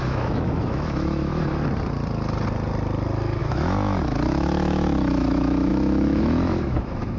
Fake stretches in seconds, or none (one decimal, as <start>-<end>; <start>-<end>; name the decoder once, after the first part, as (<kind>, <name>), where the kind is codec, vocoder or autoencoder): 0.0-1.3 (autoencoder, DAC-VAE); 3.4-7.2